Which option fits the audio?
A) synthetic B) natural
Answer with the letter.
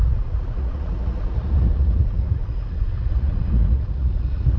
A